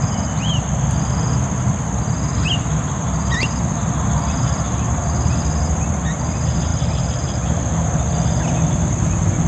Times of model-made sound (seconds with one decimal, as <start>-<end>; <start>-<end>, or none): 6.7-8.4